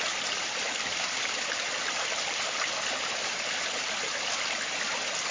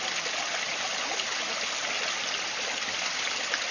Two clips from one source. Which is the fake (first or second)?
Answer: first